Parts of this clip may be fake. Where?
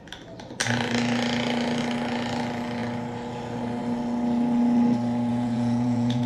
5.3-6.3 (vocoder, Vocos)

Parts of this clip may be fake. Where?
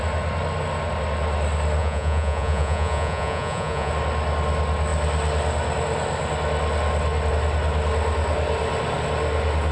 1.8-3.9 (vocoder, Vocos)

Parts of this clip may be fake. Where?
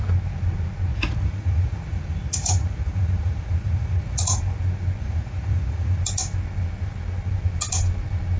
0.9-4.4 (vocoder, Vocos); 5.0-6.0